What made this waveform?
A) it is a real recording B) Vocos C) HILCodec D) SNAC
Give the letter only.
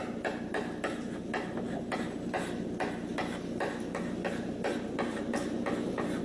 A